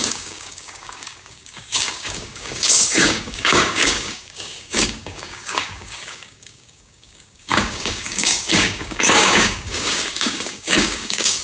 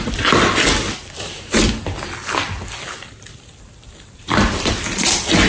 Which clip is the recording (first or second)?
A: second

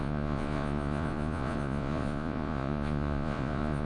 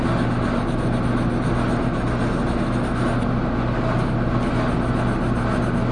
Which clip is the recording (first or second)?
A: second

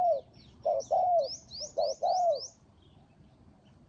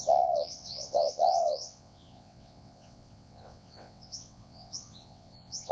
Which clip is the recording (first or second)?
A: first